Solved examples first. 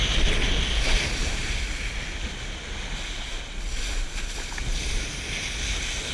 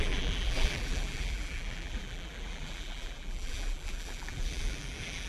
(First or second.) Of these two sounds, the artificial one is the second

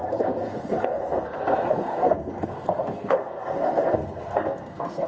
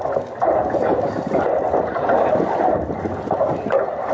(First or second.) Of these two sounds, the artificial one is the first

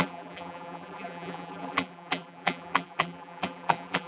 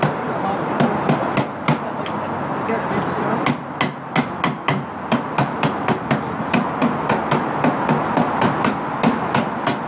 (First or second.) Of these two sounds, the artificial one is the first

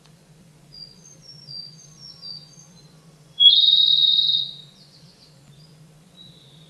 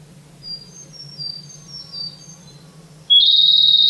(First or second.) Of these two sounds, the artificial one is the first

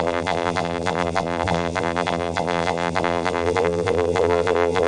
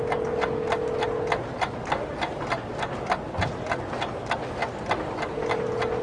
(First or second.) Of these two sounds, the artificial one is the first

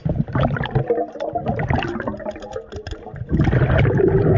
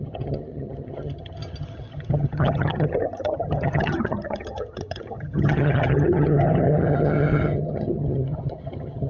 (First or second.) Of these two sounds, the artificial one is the second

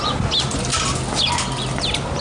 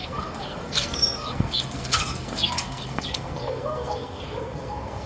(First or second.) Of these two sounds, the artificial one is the second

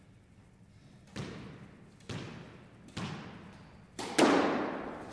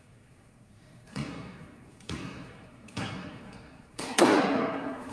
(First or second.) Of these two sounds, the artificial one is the second